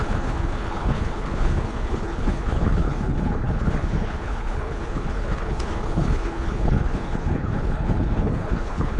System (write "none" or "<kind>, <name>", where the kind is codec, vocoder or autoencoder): codec, HILCodec